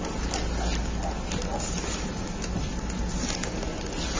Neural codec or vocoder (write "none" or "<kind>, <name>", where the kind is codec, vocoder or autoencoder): none